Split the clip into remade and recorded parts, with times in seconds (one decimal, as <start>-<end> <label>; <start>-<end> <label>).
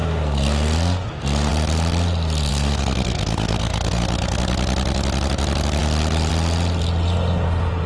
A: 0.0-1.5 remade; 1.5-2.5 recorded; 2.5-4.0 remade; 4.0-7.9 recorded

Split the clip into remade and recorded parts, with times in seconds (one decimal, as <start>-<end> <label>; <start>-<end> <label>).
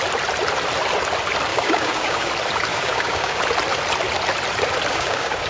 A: 0.0-1.5 recorded; 1.5-2.3 remade; 2.3-2.7 recorded; 2.7-3.4 remade; 3.4-4.9 recorded; 4.9-5.5 remade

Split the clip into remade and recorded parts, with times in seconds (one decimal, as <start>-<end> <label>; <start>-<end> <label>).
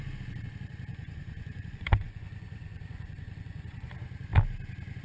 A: 0.0-0.9 recorded; 0.9-3.9 remade; 3.9-5.0 recorded